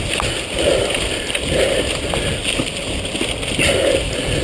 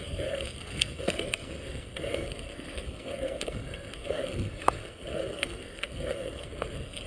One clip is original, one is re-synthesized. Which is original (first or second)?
first